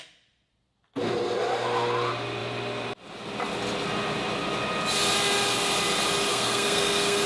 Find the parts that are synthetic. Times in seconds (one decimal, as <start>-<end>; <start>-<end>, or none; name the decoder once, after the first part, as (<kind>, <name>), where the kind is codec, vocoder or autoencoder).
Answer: 6.3-7.3 (codec, SNAC)